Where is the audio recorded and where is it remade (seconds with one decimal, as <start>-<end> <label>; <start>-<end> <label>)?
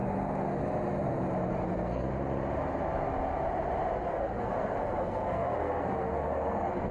0.0-1.5 recorded; 1.5-2.1 remade; 2.1-4.1 recorded; 4.1-6.9 remade